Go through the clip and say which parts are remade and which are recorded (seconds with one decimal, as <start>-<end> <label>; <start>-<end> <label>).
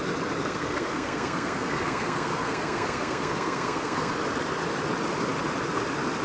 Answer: 0.0-0.4 recorded; 0.4-4.1 remade; 4.1-6.2 recorded